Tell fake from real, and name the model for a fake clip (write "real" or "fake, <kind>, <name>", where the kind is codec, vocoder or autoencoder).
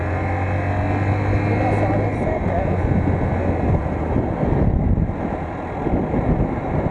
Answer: real